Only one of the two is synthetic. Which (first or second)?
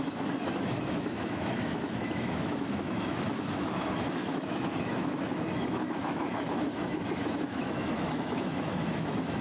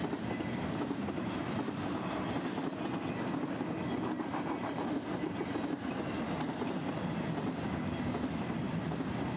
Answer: first